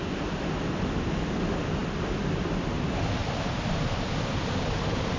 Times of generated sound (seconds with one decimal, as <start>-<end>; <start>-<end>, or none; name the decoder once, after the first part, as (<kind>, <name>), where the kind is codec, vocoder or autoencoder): none